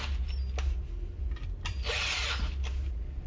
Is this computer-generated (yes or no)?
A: no